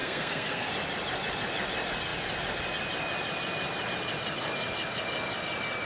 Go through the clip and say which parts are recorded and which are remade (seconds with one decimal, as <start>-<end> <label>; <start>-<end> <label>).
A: 0.0-0.7 remade; 0.7-5.9 recorded